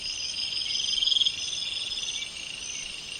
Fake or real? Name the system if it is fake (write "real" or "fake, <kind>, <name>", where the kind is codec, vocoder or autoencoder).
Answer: real